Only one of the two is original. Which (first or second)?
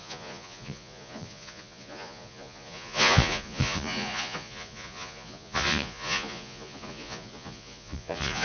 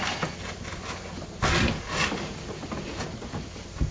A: second